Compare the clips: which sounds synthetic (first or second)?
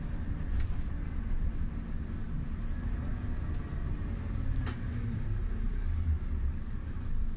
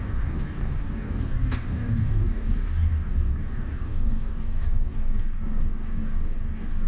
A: second